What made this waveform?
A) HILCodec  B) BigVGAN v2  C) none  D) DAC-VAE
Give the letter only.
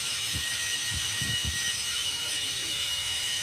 D